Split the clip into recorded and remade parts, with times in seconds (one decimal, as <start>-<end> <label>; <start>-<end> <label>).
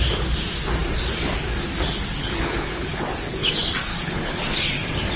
0.0-2.2 recorded; 2.2-3.5 remade; 3.5-3.9 recorded; 3.9-4.6 remade; 4.6-5.2 recorded